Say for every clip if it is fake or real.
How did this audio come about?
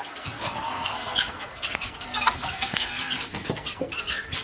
fake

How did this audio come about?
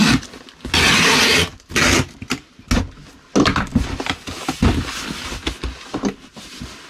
real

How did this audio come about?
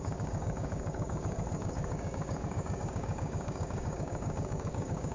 fake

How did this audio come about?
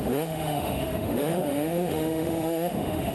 fake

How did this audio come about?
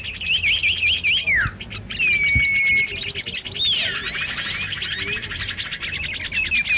real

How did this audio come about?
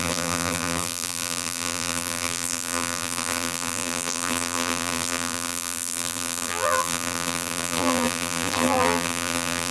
fake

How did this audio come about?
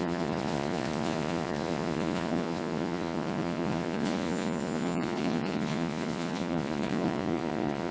fake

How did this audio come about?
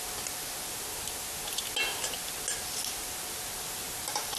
real